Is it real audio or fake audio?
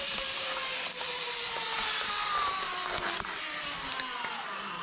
real